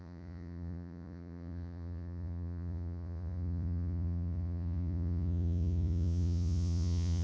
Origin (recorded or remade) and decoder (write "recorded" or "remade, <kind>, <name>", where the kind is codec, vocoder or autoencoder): remade, vocoder, Vocos